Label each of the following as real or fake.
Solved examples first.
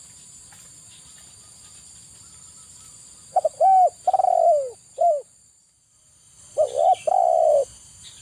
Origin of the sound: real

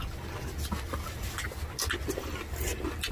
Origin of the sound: real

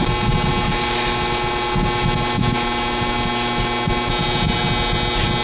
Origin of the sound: real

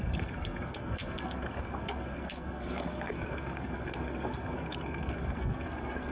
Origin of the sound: fake